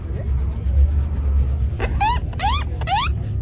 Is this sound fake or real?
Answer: real